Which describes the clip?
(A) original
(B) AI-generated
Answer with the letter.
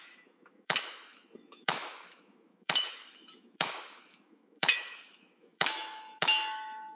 B